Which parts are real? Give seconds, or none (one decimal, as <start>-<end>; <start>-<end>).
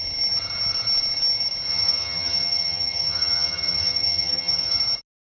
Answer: 0.0-1.7; 4.8-5.4